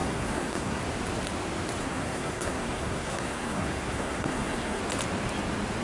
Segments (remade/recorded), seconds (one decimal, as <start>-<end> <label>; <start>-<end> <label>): 0.0-0.8 remade; 0.8-1.8 recorded; 1.8-4.8 remade; 4.8-5.8 recorded